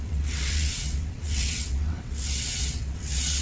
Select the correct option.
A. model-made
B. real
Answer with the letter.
A